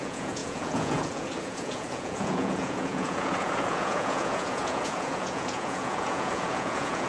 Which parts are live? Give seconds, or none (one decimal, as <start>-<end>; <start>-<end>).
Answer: none